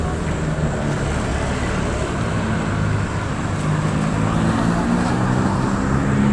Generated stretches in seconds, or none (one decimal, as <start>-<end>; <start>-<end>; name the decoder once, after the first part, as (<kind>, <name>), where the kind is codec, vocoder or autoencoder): none